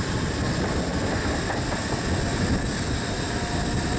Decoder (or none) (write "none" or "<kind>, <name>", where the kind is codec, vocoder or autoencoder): none